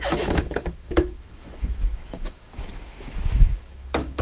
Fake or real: fake